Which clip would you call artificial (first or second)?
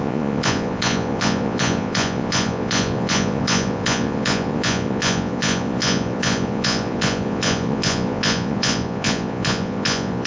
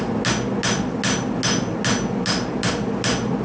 first